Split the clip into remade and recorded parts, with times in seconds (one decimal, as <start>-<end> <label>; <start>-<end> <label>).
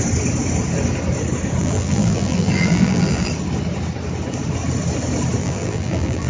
0.0-1.6 recorded; 1.6-3.3 remade; 3.3-5.4 recorded; 5.4-6.3 remade